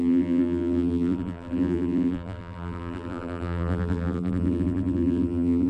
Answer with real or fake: fake